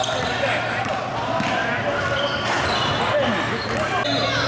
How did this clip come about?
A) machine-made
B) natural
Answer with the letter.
B